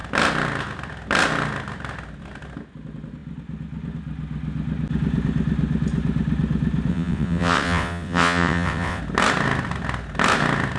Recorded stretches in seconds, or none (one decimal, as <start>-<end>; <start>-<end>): 0.0-6.9; 9.0-10.8